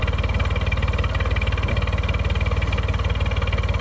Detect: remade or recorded recorded